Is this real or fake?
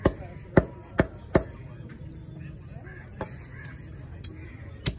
real